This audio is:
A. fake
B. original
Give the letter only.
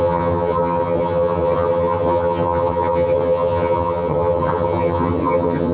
A